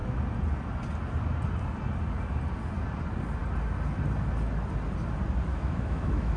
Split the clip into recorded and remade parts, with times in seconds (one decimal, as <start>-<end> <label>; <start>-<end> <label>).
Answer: 0.0-5.5 recorded; 5.5-6.4 remade